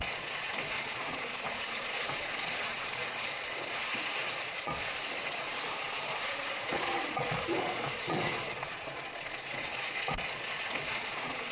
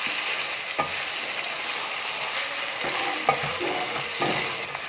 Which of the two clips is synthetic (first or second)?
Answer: first